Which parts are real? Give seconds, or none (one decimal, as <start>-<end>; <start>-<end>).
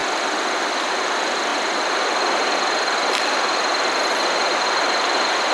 0.0-0.9